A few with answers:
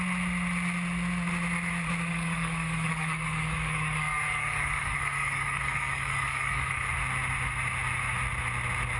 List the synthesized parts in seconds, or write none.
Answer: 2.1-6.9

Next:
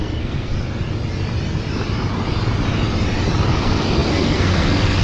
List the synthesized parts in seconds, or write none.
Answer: 0.0-0.5; 3.5-5.0

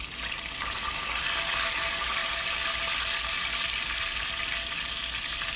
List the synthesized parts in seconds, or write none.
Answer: none

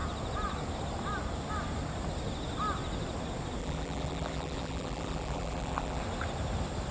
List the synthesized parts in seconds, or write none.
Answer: 3.6-6.0